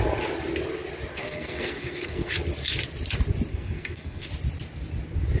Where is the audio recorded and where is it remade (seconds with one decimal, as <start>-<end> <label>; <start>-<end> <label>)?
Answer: 0.0-1.1 recorded; 1.1-2.3 remade; 2.3-3.5 recorded; 3.5-4.3 remade; 4.3-5.4 recorded